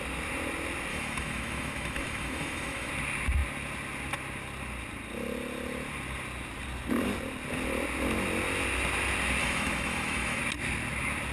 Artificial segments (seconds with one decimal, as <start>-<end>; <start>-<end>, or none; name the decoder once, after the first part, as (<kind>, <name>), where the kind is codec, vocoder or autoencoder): 0.9-2.9 (autoencoder, DAC-VAE); 9.4-10.4